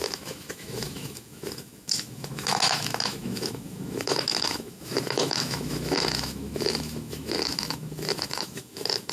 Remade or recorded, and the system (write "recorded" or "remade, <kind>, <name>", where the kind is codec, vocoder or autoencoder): remade, autoencoder, DAC-VAE